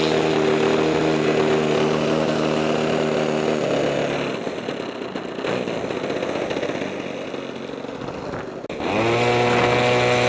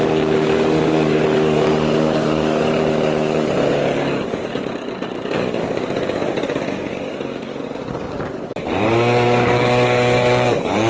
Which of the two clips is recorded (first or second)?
first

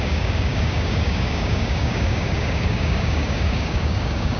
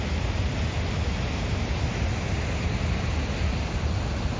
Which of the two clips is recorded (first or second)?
second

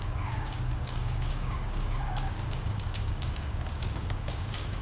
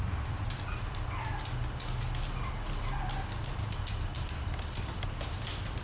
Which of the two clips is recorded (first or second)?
second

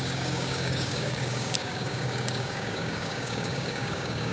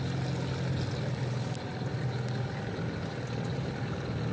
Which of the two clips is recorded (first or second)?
second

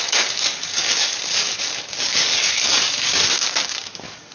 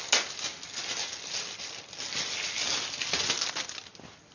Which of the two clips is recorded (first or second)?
second